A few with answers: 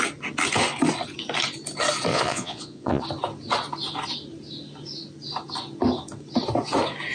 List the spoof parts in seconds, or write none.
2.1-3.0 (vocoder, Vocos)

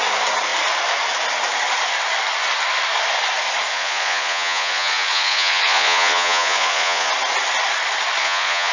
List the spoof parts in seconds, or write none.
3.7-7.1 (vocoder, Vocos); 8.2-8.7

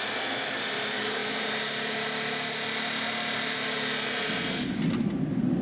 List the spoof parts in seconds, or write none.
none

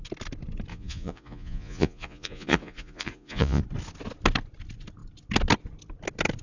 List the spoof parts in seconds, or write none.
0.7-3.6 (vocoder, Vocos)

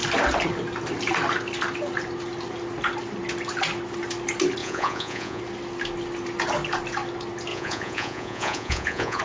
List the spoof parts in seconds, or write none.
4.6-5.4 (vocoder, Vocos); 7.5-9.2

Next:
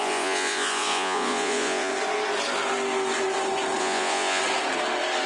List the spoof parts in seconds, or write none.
0.0-1.9 (vocoder, Vocos); 3.8-4.4

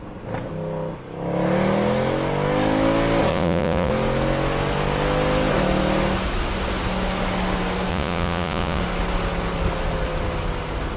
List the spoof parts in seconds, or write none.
3.3-3.9 (vocoder, Vocos); 7.9-8.8